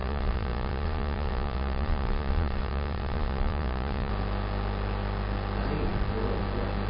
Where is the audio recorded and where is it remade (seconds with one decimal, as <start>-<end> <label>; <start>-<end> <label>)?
0.0-4.1 remade; 4.1-6.9 recorded